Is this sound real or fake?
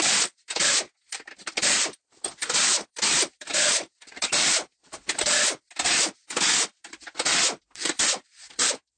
fake